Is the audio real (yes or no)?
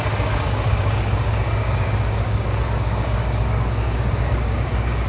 no